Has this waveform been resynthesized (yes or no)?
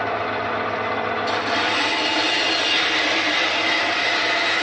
no